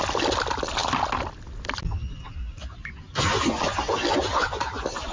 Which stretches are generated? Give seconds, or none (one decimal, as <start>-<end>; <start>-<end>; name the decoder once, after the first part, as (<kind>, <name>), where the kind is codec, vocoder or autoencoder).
none